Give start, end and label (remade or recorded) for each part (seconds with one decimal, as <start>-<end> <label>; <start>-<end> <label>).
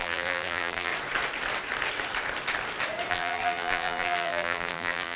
0.0-0.9 remade; 0.9-3.1 recorded; 3.1-5.2 remade